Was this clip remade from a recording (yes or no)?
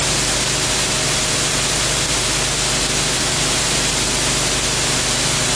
no